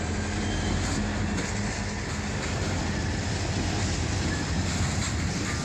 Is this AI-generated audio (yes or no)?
no